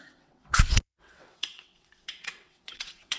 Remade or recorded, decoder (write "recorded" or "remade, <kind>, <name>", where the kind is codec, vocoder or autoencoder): remade, vocoder, WaveNeXt